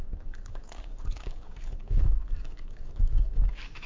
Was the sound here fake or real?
fake